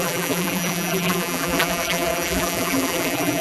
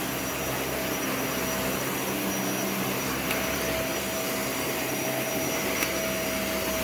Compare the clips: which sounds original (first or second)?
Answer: second